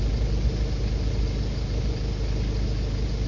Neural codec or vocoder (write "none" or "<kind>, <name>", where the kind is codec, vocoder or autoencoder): none